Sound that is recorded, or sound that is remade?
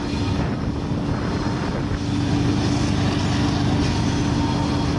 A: recorded